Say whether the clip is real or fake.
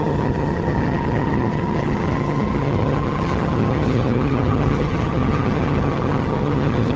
fake